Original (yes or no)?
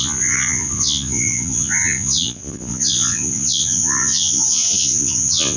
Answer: no